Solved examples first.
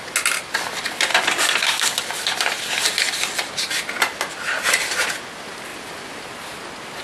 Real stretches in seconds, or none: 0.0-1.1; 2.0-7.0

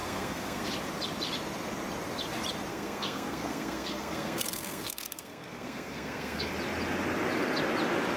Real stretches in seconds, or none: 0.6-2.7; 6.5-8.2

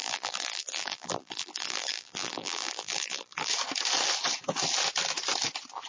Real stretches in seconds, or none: 3.5-5.9

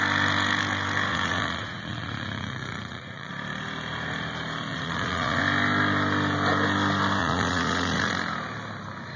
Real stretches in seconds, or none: 0.0-1.1; 3.3-4.7; 5.4-7.2; 8.1-9.2